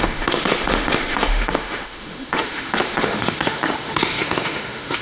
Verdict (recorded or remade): remade